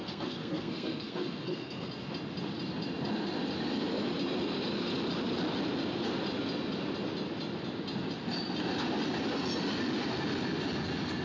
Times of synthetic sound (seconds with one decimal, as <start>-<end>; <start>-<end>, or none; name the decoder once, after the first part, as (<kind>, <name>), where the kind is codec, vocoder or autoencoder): 0.0-1.9 (codec, SNAC)